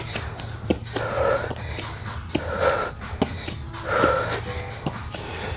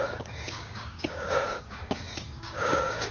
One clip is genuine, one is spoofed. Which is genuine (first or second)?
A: first